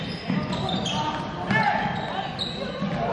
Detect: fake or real real